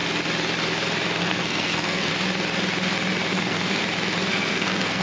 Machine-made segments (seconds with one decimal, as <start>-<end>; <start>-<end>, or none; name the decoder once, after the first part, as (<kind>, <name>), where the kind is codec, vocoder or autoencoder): 1.2-2.1 (codec, SNAC); 3.3-3.8; 4.3-5.0